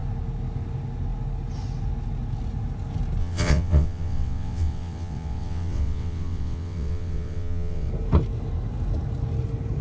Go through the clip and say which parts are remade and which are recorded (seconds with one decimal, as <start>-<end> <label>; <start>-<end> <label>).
0.0-3.2 recorded; 3.2-7.9 remade; 7.9-9.8 recorded